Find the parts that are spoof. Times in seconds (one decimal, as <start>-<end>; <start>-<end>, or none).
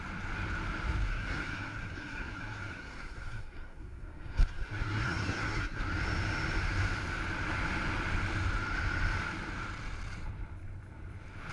1.1-5.8